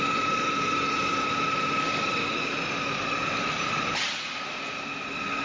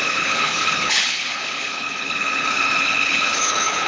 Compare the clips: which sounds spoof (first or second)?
second